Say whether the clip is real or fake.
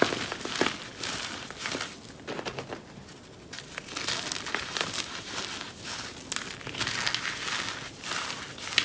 real